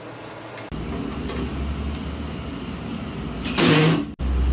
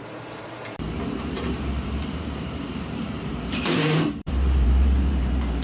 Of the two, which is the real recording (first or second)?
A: first